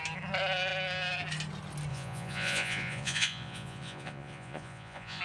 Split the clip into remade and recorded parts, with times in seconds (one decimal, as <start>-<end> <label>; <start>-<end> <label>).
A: 0.0-1.9 recorded; 1.9-5.2 remade